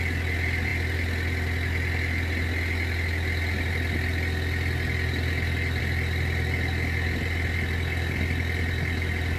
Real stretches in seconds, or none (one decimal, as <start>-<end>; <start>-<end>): 0.0-9.4